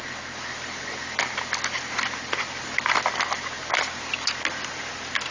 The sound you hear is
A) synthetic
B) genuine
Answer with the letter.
B